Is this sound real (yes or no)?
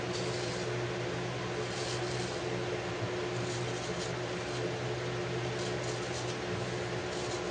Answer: yes